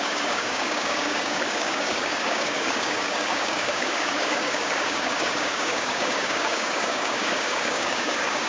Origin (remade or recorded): remade